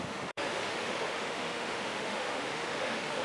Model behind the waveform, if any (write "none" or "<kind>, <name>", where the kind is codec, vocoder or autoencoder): autoencoder, DAC-VAE